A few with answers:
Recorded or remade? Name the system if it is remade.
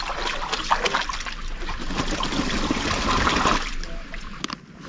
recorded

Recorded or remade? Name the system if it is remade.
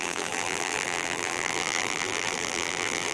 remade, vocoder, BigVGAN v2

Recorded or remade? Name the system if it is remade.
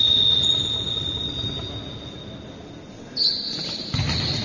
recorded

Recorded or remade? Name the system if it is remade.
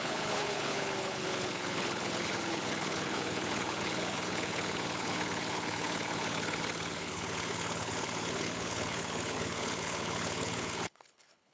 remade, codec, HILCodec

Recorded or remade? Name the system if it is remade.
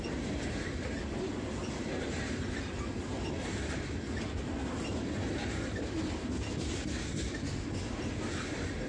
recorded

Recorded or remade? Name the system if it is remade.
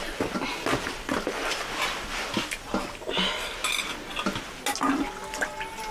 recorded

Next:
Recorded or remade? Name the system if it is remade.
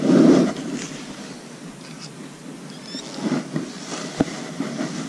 recorded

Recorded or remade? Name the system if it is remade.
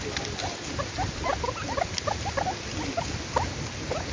recorded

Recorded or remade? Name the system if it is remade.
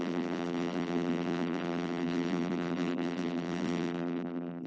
remade, vocoder, BigVGAN v2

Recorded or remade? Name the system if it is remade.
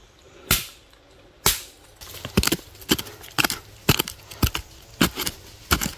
recorded